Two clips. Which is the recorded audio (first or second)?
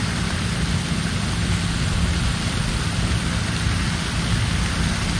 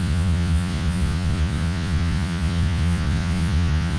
first